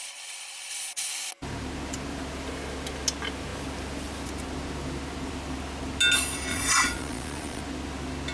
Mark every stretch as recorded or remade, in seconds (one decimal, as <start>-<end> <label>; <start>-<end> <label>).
0.0-1.1 remade; 1.1-6.5 recorded; 6.5-7.6 remade; 7.6-8.3 recorded